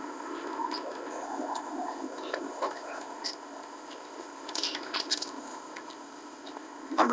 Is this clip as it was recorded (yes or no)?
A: no